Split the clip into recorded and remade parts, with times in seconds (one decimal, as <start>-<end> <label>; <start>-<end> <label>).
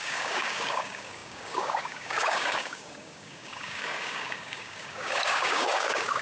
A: 0.0-6.2 remade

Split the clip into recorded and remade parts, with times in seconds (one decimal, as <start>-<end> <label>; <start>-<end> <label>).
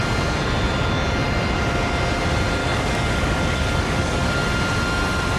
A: 0.0-2.6 recorded; 2.6-4.4 remade; 4.4-5.4 recorded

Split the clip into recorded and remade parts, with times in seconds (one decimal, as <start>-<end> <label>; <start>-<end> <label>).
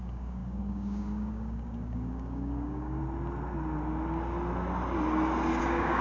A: 0.0-3.0 remade; 3.0-5.6 recorded; 5.6-6.0 remade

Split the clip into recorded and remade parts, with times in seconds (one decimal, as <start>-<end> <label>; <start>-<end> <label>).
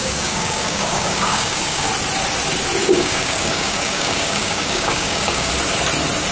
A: 0.0-1.9 remade; 1.9-2.8 recorded; 2.8-5.5 remade; 5.5-6.3 recorded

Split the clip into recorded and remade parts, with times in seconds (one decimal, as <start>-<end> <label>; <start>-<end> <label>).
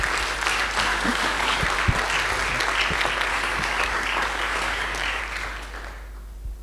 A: 0.0-0.9 recorded; 0.9-1.6 remade; 1.6-3.3 recorded; 3.3-5.2 remade; 5.2-6.6 recorded